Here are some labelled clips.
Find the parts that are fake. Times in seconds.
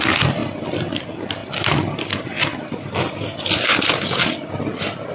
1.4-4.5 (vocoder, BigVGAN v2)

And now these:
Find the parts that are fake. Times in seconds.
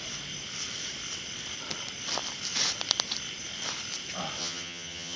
4.4-5.2 (vocoder, HiFi-GAN)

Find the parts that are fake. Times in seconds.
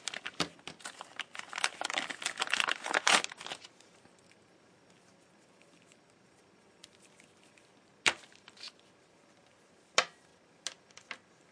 none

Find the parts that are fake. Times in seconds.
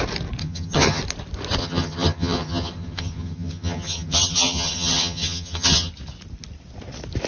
0.4-1.0 (vocoder, HiFi-GAN); 1.6-5.9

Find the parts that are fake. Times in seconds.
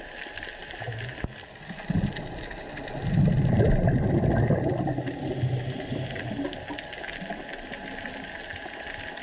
none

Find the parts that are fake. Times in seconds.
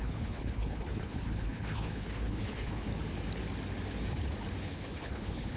0.0-2.9 (codec, HILCodec); 4.6-5.6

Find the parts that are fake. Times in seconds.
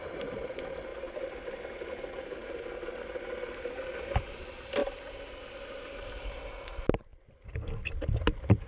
7.1-8.7 (vocoder, BigVGAN v2)